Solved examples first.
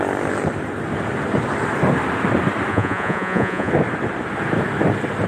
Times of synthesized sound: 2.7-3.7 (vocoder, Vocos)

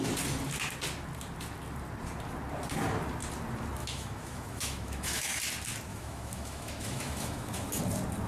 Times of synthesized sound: 3.8-5.4 (autoencoder, DAC-VAE); 5.9-7.8

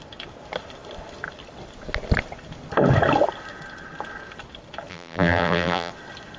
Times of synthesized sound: 4.9-5.9 (vocoder, BigVGAN v2)

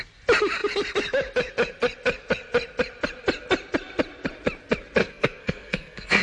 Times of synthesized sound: 5.0-6.2 (codec, SNAC)